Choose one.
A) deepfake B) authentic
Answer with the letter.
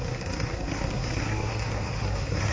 A